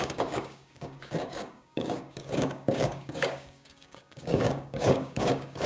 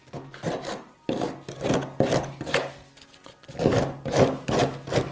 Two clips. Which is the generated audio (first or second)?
first